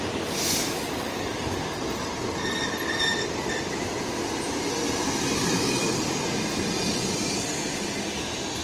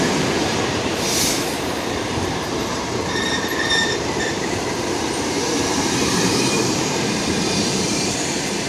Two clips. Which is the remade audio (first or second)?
second